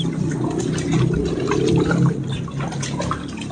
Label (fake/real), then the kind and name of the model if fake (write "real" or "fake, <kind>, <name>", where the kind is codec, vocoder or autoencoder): real